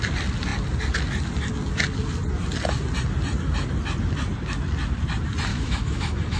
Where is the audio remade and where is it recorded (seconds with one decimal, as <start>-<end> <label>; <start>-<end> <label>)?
0.0-5.5 recorded; 5.5-6.4 remade